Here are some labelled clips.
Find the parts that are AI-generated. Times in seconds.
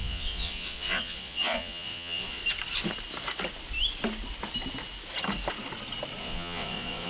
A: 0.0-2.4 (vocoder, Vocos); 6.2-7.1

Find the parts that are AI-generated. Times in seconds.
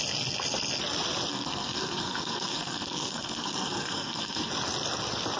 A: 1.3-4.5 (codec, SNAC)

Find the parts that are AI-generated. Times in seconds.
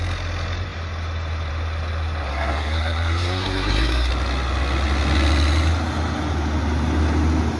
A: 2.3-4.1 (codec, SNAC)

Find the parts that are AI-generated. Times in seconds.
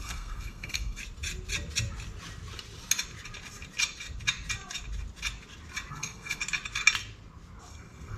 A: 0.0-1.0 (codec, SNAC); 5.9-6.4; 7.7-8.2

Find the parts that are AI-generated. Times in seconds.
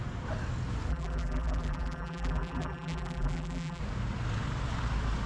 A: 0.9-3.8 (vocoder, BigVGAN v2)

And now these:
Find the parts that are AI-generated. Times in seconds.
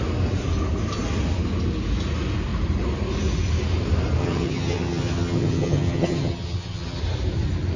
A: 4.2-7.0 (vocoder, HiFi-GAN)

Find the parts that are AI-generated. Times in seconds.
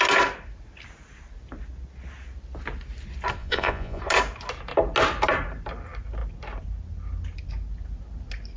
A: 3.4-4.0 (vocoder, Vocos)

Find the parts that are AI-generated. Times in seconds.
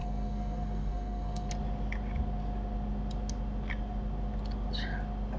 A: 0.0-1.5 (codec, SNAC)